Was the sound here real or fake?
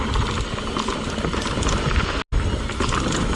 real